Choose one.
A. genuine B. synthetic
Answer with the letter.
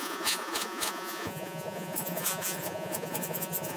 B